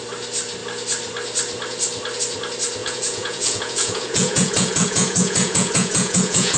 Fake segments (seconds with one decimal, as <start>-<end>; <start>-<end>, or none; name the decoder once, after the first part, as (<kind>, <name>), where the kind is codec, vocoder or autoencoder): 2.8-6.6 (vocoder, Vocos)